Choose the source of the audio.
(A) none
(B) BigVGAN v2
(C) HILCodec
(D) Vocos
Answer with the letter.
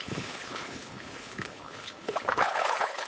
C